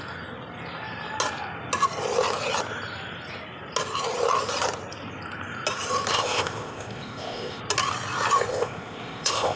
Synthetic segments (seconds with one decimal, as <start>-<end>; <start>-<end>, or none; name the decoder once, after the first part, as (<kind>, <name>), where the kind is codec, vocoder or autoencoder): 6.1-7.6 (codec, ZipCodec); 8.5-9.6